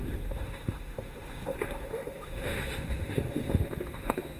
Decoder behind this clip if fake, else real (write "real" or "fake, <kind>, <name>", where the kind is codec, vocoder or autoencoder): fake, autoencoder, DAC-VAE